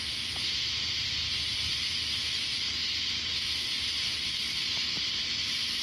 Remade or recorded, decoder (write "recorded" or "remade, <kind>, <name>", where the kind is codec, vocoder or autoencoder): remade, vocoder, BigVGAN v2